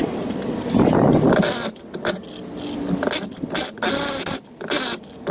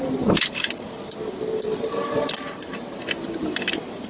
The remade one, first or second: second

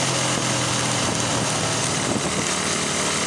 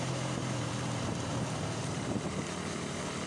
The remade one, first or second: second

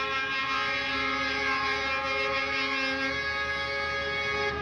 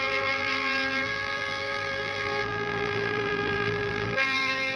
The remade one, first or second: second